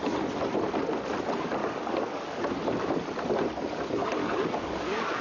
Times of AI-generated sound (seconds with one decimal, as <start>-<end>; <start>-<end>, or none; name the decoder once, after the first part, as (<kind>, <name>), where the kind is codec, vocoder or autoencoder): 1.6-2.4 (codec, DAC); 4.2-5.2